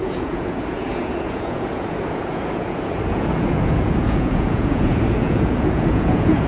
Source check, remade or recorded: remade